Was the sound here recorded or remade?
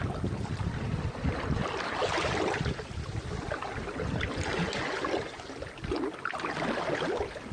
recorded